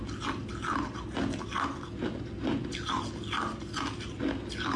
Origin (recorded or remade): recorded